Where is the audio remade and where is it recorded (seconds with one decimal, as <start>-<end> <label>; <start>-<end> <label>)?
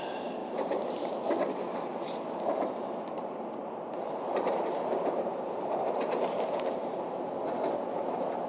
0.0-0.4 recorded; 0.4-1.1 remade; 1.1-1.9 recorded; 1.9-6.8 remade; 6.8-8.5 recorded